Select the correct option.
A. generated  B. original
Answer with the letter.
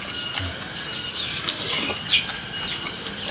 B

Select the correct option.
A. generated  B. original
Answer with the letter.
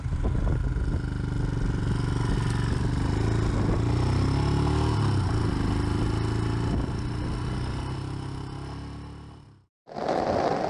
B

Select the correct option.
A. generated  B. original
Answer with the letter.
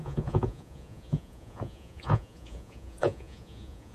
A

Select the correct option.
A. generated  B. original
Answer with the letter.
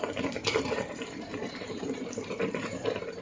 A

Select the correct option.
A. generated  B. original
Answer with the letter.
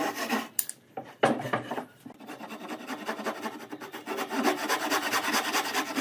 B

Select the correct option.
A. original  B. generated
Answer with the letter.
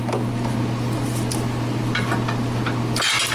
A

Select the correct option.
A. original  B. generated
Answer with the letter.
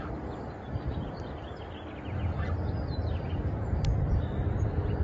A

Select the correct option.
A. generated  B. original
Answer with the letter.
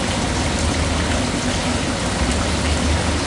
B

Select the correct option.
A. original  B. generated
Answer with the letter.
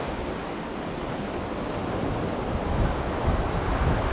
A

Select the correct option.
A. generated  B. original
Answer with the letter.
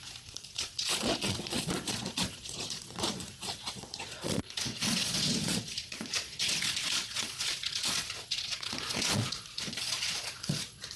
A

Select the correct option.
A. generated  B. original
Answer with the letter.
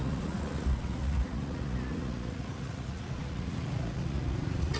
A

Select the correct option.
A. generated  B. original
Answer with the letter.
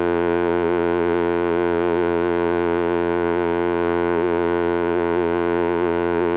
A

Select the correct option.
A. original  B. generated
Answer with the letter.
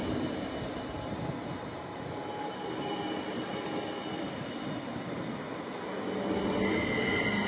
A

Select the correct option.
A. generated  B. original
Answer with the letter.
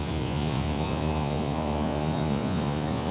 A